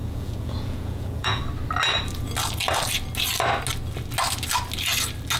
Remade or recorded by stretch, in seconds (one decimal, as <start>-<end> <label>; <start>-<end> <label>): 0.0-1.4 remade; 1.4-5.4 recorded